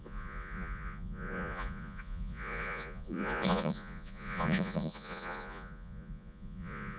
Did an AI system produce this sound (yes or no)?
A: yes